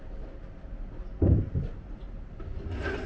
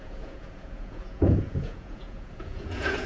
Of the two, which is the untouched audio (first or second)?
first